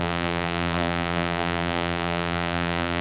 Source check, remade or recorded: remade